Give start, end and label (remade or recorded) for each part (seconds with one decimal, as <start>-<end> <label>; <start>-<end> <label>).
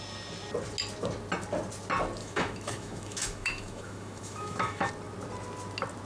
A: 0.0-2.2 recorded; 2.2-4.9 remade; 4.9-6.1 recorded